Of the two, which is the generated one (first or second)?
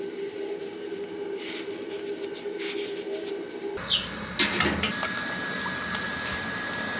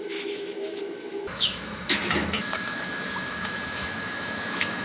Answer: second